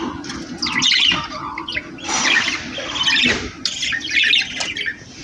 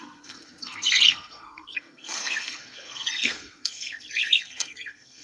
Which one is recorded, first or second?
first